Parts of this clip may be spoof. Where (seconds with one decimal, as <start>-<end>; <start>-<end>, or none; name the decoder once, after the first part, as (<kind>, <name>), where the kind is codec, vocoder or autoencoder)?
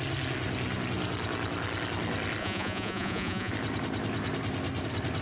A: 2.4-3.5 (vocoder, Vocos)